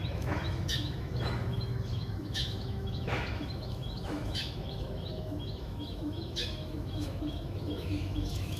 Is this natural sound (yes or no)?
no